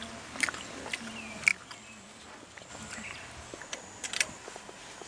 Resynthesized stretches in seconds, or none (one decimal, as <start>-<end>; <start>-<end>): none